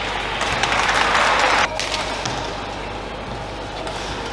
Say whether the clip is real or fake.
real